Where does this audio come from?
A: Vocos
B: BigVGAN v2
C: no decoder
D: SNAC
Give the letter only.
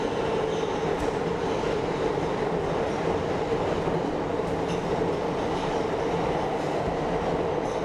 C